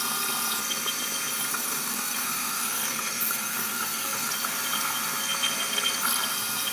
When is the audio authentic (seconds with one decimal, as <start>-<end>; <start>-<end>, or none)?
0.0-1.5; 4.3-6.7